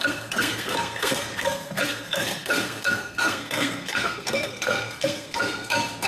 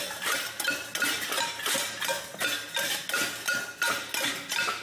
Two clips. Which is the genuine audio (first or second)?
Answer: second